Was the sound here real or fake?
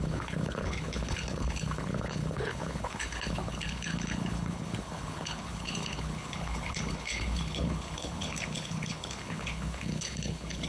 fake